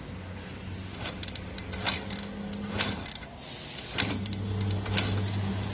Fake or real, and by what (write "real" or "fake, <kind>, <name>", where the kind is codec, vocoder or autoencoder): real